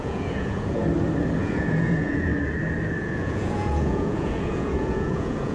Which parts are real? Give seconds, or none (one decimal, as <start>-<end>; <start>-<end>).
0.8-1.4; 2.3-3.0